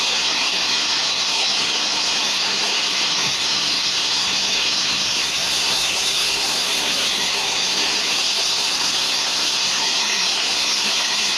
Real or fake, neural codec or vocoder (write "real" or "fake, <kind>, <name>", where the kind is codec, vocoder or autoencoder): fake, codec, SNAC